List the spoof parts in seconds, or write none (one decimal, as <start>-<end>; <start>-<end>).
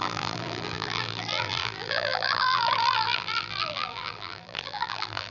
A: 0.0-5.3